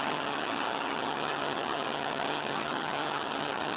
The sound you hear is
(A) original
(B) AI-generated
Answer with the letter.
B